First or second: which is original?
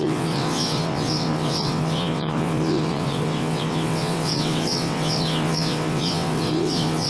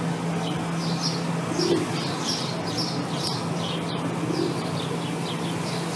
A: second